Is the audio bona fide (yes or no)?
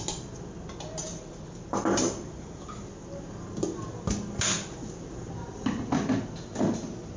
yes